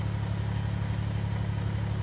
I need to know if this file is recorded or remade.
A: recorded